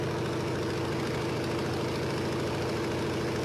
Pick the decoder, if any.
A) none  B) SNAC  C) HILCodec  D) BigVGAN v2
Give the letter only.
A